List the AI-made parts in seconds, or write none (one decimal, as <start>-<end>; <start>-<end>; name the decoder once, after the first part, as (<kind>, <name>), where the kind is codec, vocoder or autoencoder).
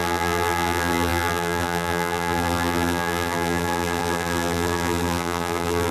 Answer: 0.0-5.9 (vocoder, BigVGAN v2)